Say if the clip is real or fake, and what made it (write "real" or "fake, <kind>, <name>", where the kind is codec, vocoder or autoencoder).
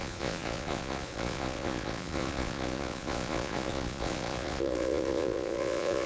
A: fake, vocoder, Vocos